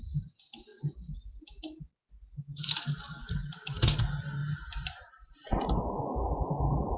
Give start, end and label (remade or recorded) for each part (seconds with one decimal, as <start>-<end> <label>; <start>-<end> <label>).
0.0-4.4 recorded; 4.4-7.0 remade